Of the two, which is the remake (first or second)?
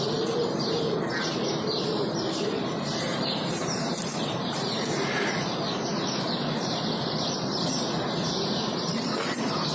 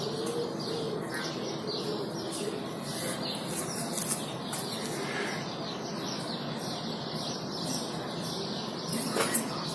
first